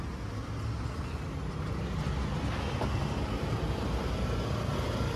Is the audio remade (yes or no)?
no